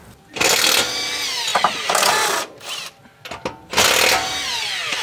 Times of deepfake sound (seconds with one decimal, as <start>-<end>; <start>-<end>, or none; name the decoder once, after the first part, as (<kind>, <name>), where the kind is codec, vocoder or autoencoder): 0.0-1.5 (vocoder, BigVGAN v2); 4.5-5.0